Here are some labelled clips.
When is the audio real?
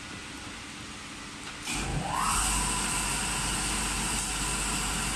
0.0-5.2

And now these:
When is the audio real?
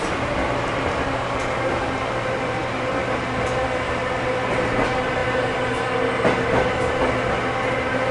0.0-8.1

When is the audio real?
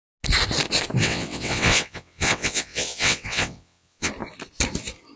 0.0-1.0; 4.1-5.2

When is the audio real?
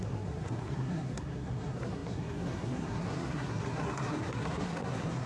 none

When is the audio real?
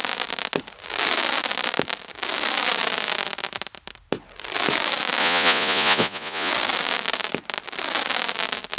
0.0-5.2; 6.5-8.8